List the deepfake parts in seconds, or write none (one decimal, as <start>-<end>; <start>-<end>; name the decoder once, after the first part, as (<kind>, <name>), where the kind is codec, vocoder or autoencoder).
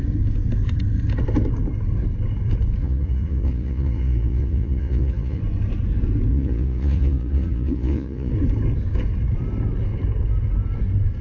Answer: 2.8-5.4 (vocoder, Vocos); 6.3-8.3